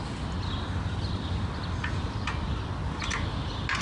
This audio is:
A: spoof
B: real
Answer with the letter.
B